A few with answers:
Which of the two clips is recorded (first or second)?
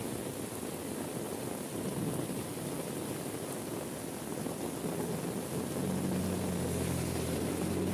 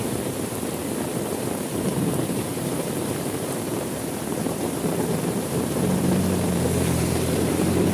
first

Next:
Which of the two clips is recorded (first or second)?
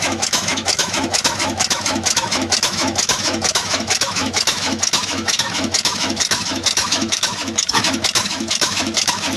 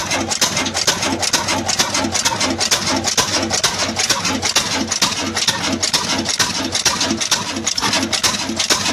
second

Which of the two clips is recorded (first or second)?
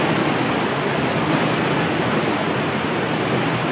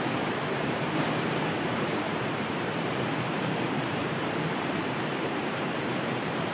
first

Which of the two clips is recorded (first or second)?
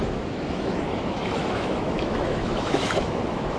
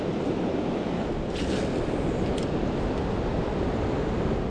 second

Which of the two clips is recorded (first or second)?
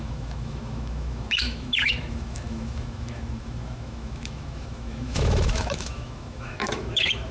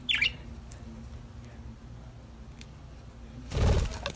second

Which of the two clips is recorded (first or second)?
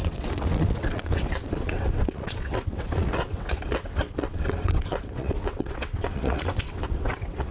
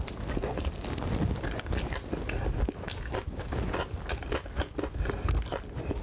second